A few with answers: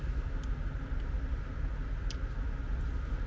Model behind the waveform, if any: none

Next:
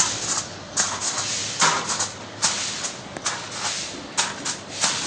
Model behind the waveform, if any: none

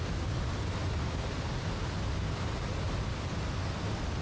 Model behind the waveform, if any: none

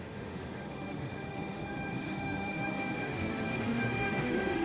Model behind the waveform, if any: autoencoder, DAC-VAE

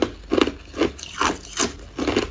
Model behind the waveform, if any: none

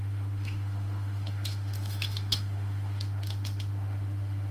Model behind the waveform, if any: autoencoder, DAC-VAE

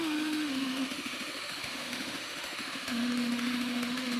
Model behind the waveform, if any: autoencoder, DAC-VAE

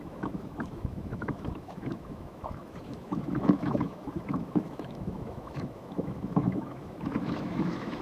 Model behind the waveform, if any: autoencoder, DAC-VAE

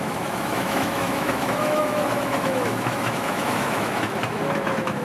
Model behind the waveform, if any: autoencoder, DAC-VAE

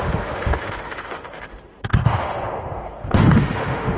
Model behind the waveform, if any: autoencoder, DAC-VAE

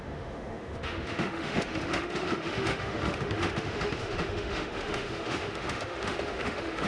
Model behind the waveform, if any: autoencoder, DAC-VAE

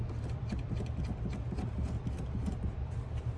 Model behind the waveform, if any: none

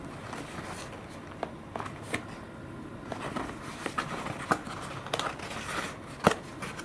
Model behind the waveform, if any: none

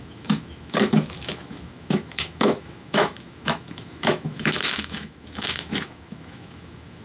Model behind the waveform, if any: autoencoder, DAC-VAE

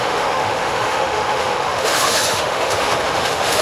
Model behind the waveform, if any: autoencoder, DAC-VAE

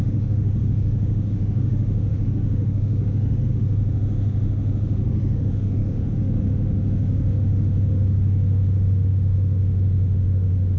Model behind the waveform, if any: autoencoder, DAC-VAE